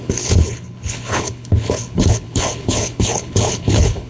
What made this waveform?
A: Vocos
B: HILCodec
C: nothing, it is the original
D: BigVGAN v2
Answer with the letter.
B